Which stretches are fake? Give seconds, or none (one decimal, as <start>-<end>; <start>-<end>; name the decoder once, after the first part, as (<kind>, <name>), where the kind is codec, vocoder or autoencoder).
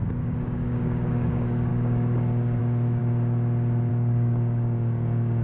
0.0-3.0 (codec, DAC); 3.9-5.4